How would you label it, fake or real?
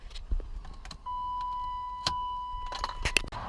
real